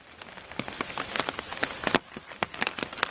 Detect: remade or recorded recorded